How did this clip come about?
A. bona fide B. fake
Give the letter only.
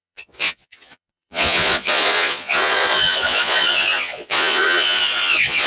B